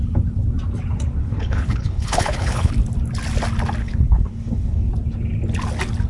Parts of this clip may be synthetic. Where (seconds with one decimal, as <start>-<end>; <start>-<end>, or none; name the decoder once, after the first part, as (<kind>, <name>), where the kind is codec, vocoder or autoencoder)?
1.2-2.7 (codec, HILCodec); 3.8-4.9